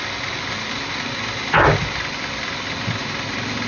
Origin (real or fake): real